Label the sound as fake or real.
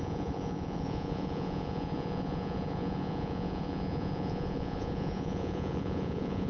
fake